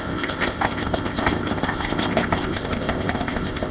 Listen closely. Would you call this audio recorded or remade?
remade